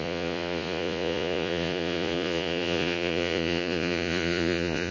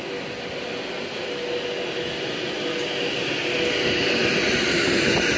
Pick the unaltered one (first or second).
second